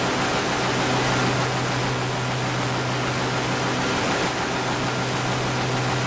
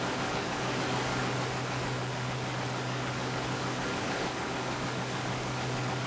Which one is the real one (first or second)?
first